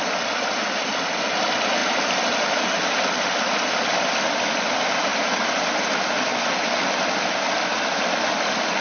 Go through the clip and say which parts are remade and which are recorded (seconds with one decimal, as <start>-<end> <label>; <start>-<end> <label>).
0.0-5.1 recorded; 5.1-5.6 remade; 5.6-6.3 recorded; 6.3-7.5 remade; 7.5-8.8 recorded